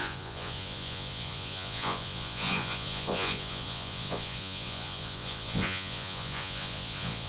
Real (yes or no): no